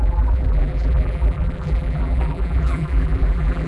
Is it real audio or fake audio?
fake